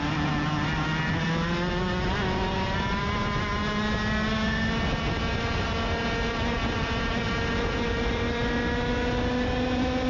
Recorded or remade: recorded